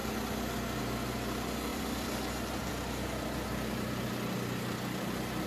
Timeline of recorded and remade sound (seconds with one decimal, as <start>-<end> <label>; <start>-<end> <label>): 0.0-1.7 recorded; 1.7-2.7 remade; 2.7-5.5 recorded

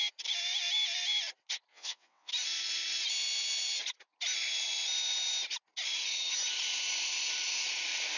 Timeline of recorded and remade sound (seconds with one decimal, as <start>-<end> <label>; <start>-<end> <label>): 0.0-1.7 recorded; 1.7-2.3 remade; 2.3-8.2 recorded

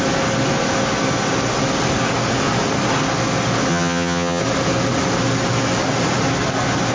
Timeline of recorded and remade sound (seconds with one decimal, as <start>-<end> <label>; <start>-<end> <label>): 0.0-3.7 recorded; 3.7-4.4 remade; 4.4-6.9 recorded

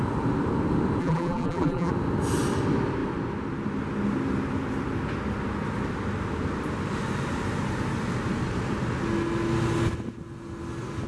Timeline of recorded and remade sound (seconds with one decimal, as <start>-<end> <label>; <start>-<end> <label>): 0.0-1.0 recorded; 1.0-1.9 remade; 1.9-11.1 recorded

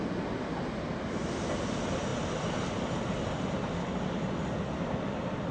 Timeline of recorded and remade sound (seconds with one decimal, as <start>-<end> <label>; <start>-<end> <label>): 0.0-5.5 recorded

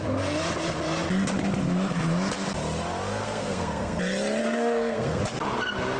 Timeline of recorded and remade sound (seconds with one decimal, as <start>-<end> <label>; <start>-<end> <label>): 0.0-3.2 recorded; 3.2-4.0 remade; 4.0-4.4 recorded; 4.4-5.2 remade; 5.2-6.0 recorded